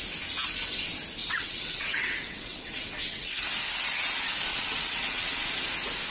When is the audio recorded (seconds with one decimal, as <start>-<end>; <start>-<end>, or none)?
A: 0.0-1.2; 3.5-4.5; 5.5-6.1